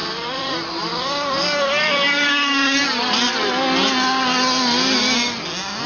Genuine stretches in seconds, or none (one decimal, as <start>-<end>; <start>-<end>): 3.5-5.9